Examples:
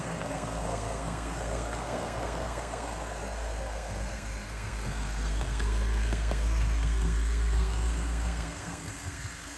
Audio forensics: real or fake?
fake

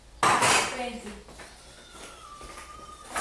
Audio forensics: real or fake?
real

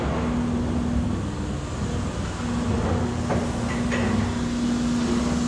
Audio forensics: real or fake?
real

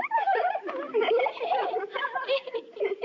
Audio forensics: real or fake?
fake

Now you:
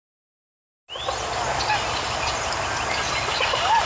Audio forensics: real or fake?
real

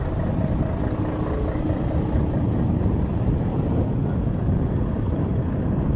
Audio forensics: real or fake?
real